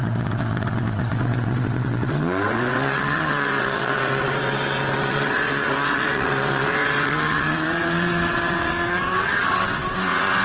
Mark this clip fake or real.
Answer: fake